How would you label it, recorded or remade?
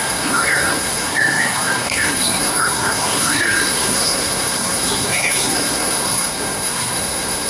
remade